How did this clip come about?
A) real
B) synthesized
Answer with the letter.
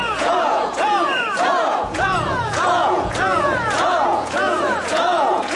B